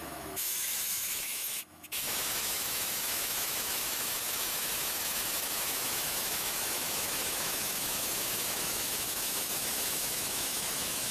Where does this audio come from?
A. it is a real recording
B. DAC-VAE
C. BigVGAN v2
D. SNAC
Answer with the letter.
B